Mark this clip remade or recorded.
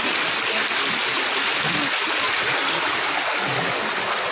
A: recorded